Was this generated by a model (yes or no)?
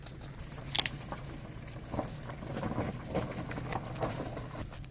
no